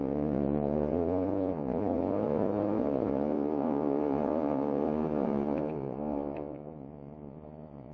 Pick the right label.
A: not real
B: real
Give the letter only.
A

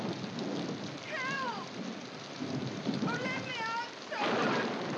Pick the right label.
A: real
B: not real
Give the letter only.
A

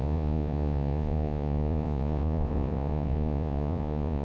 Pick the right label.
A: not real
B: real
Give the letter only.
A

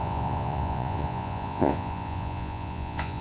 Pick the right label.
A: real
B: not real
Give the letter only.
B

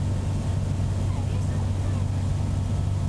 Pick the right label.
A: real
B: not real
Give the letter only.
A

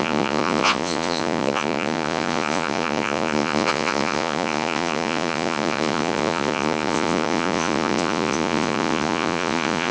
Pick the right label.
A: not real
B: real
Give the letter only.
A